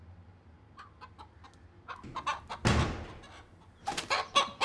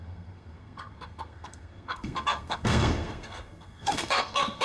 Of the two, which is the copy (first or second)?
second